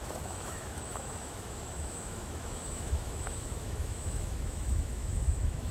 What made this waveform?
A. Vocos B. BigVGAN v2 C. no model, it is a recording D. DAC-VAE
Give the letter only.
D